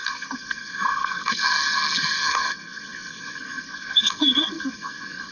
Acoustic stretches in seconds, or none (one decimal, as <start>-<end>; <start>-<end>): none